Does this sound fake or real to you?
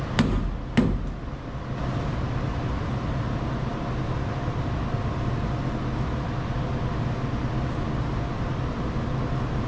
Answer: real